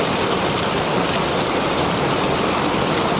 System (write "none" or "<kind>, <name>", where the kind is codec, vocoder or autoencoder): vocoder, BigVGAN v2